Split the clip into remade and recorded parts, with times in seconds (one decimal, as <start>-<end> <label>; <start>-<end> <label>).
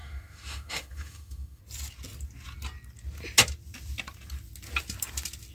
0.0-1.6 remade; 1.6-5.5 recorded